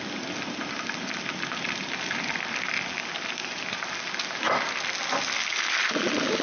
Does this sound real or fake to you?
real